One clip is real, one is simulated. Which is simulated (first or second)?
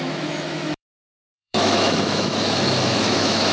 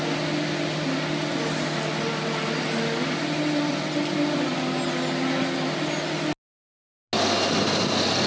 first